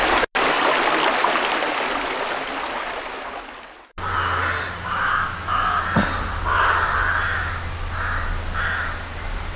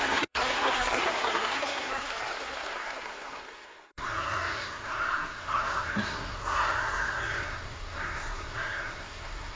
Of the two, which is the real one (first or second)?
first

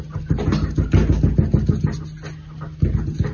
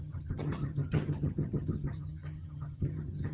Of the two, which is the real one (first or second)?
first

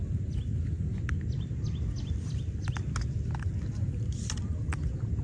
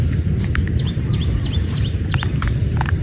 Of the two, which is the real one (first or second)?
first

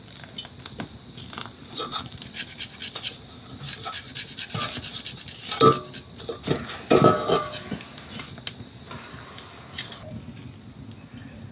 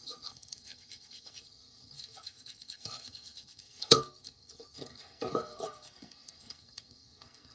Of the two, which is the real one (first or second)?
first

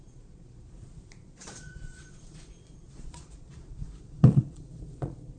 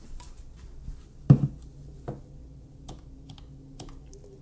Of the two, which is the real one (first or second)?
second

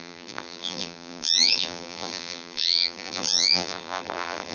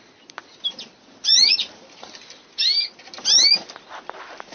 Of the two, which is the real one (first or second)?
second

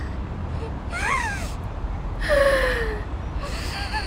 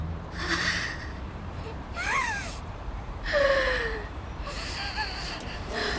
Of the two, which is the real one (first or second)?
first